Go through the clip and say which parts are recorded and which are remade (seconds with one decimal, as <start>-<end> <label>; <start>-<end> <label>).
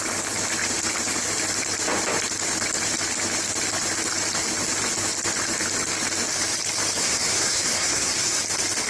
0.0-7.0 recorded; 7.0-8.4 remade; 8.4-8.9 recorded